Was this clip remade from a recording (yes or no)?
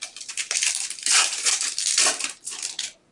yes